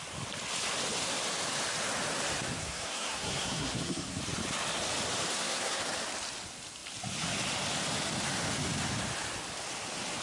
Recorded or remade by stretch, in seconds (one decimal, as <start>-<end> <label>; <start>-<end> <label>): 0.0-2.6 recorded; 2.6-4.2 remade; 4.2-5.3 recorded; 5.3-5.8 remade; 5.8-10.2 recorded